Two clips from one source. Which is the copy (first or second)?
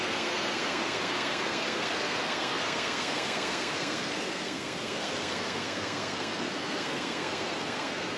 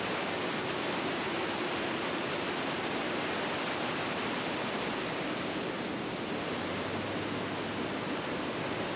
first